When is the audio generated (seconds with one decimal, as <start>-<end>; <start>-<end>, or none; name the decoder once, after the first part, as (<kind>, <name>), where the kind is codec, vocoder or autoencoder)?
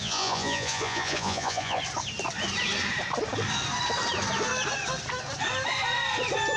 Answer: 0.0-1.8 (vocoder, Vocos)